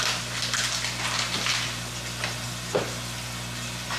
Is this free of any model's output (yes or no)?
yes